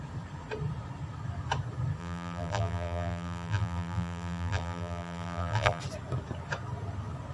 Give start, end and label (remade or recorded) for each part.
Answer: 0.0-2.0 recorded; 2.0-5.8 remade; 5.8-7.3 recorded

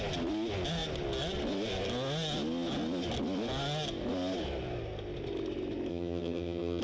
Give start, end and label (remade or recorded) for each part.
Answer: 0.0-5.9 recorded; 5.9-6.8 remade

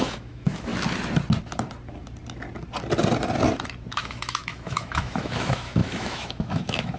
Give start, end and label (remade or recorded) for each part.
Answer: 0.0-0.7 remade; 0.7-3.9 recorded; 3.9-7.0 remade

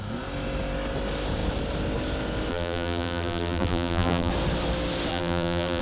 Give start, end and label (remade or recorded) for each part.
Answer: 0.0-2.5 recorded; 2.5-4.3 remade; 4.3-5.1 recorded; 5.1-5.8 remade

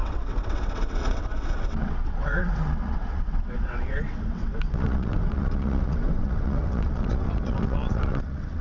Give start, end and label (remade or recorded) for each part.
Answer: 0.0-8.6 remade